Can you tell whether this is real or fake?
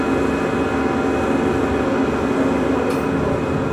real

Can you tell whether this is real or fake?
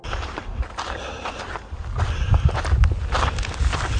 real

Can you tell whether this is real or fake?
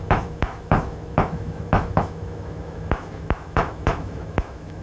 fake